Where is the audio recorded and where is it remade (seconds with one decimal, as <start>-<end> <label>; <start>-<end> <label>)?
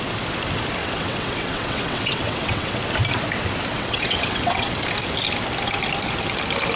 0.0-0.8 recorded; 0.8-2.8 remade; 2.8-3.7 recorded; 3.7-4.8 remade; 4.8-6.8 recorded